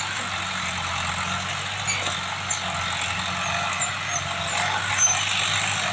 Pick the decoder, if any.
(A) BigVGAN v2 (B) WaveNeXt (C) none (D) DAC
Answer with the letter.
C